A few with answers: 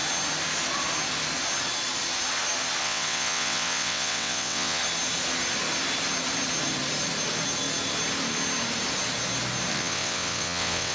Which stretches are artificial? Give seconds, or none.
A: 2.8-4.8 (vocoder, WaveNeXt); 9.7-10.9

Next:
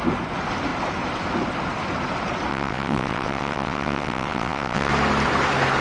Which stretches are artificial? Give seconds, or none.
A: 2.5-4.9 (vocoder, WaveNeXt)

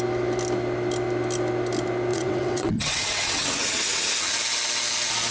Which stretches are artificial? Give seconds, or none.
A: 2.1-4.0 (vocoder, WaveNeXt)

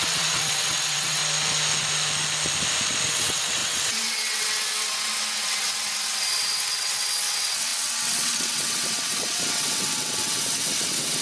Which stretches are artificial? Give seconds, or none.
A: 0.0-1.2 (vocoder, WaveNeXt); 3.1-11.2

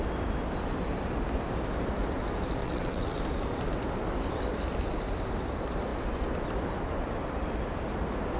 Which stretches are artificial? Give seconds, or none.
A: 2.6-3.2 (vocoder, WaveNeXt)

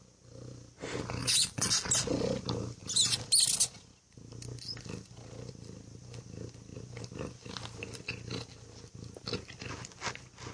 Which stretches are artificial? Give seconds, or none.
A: 1.2-1.7 (vocoder, WaveNeXt)

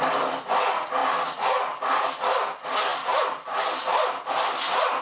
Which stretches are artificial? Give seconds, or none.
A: none

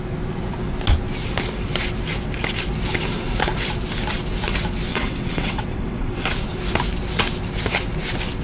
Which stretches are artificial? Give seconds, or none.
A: 4.9-6.3 (vocoder, WaveNeXt)